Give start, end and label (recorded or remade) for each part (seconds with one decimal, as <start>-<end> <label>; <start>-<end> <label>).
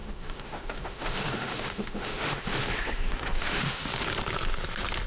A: 0.0-3.8 remade; 3.8-5.1 recorded